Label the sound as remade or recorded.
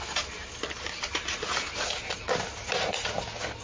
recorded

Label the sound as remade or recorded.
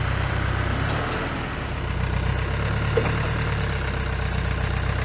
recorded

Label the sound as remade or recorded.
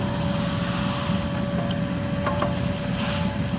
recorded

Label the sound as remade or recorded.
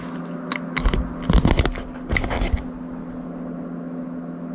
recorded